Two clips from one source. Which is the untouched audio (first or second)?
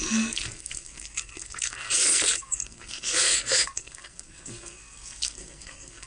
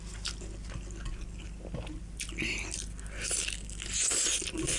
second